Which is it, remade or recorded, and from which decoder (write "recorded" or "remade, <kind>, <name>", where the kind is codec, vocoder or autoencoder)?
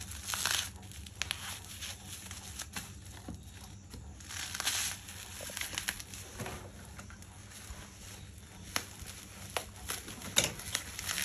recorded